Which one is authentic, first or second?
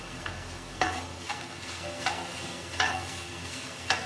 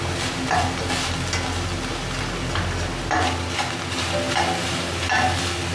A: second